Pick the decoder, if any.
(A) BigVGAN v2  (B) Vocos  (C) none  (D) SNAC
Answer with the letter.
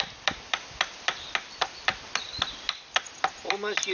A